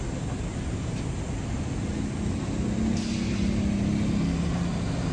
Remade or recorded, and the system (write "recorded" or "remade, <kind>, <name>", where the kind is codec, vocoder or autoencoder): recorded